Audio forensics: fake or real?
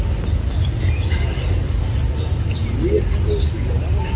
real